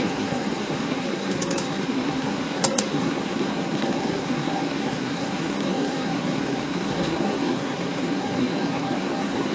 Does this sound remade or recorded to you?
remade